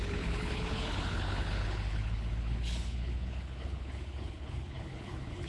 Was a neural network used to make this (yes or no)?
yes